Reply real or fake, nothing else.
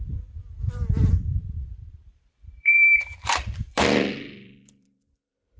fake